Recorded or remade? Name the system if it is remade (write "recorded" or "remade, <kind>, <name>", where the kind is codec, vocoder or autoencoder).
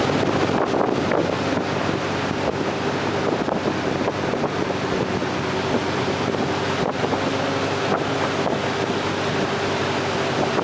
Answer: recorded